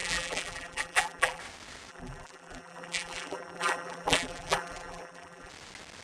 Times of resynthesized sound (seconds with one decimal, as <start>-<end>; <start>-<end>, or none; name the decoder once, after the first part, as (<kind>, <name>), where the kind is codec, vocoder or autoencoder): 0.0-1.4 (vocoder, BigVGAN v2); 1.9-5.5